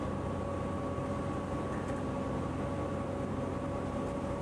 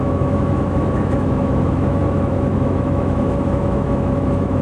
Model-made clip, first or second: second